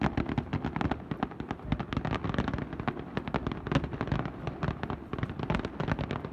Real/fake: real